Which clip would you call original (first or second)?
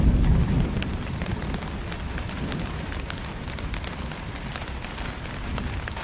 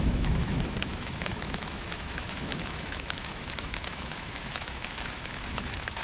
first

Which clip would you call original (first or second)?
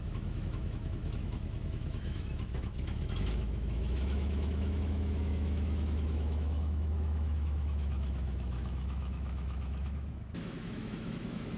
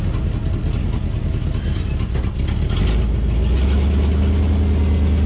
second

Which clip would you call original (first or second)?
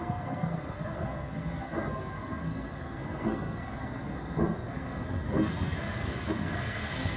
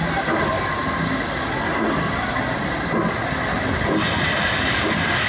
second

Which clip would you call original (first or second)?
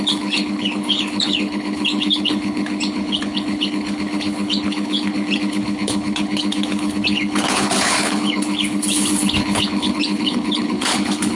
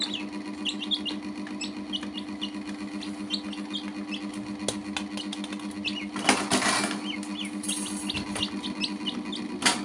second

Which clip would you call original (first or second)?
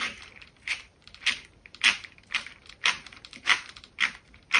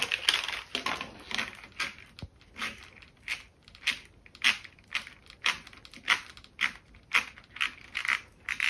second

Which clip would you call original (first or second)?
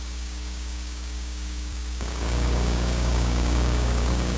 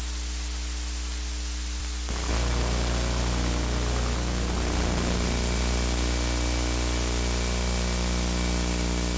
second